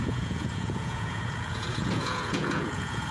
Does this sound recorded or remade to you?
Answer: remade